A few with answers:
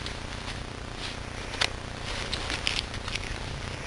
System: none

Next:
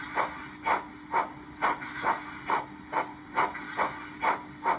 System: none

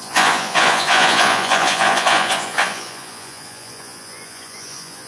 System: vocoder, Vocos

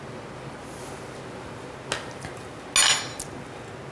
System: none